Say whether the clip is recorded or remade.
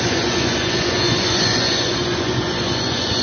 remade